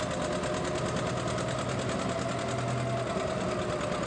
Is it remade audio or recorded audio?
recorded